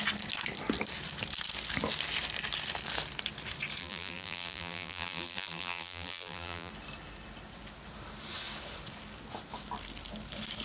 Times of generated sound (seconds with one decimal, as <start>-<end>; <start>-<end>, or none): 3.8-6.7